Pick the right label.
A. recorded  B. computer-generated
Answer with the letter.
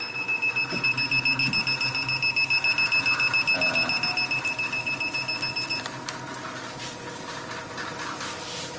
A